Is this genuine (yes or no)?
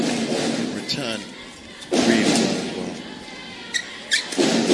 yes